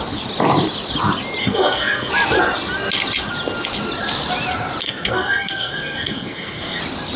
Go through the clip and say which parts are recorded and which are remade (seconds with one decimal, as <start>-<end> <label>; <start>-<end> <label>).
0.0-1.4 recorded; 1.4-2.1 remade; 2.1-4.8 recorded; 4.8-6.8 remade; 6.8-7.2 recorded